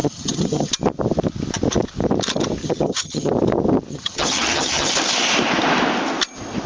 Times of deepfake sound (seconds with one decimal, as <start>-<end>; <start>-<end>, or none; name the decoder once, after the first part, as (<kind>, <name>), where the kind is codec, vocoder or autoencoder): 0.0-0.7 (vocoder, HiFi-GAN); 2.6-3.3; 3.9-4.9